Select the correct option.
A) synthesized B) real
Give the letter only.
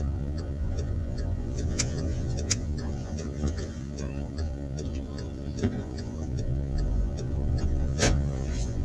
A